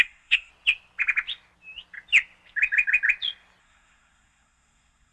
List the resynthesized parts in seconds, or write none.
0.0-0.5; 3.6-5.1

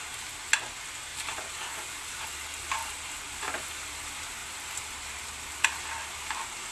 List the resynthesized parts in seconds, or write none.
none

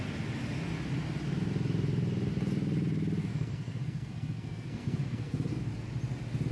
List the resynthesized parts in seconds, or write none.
3.2-5.6

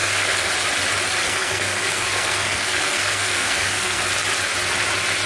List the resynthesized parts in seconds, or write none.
0.0-0.5; 1.2-4.1

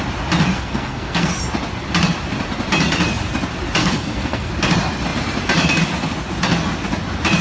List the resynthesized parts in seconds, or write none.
0.5-1.4; 3.8-4.5